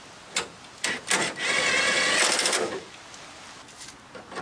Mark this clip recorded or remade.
recorded